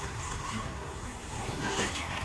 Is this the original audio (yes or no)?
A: no